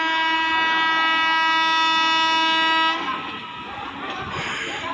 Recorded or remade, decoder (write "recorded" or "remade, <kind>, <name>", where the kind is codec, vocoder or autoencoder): recorded